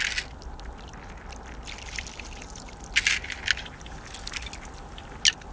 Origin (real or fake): real